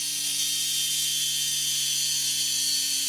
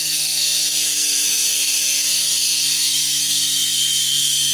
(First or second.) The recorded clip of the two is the first